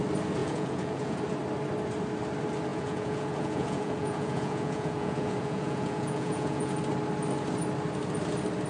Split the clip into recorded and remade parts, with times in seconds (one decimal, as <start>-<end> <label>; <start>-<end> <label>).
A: 0.0-0.4 recorded; 0.4-1.2 remade; 1.2-2.7 recorded; 2.7-6.8 remade; 6.8-8.7 recorded